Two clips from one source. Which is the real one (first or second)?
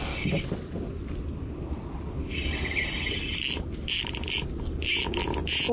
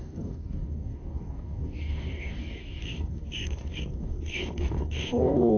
first